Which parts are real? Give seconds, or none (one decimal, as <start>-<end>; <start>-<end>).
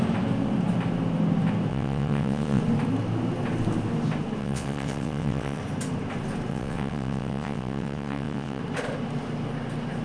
0.0-1.7; 2.6-4.4; 5.6-6.5; 8.6-10.0